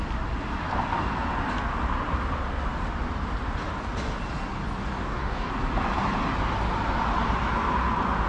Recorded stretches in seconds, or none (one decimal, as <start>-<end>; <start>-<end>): 0.0-5.0; 5.5-8.3

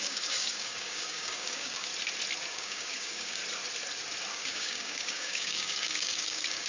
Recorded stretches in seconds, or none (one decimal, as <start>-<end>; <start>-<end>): 1.9-2.5; 3.4-4.3